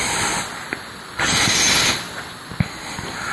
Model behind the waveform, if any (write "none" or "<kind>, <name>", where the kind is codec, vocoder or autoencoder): none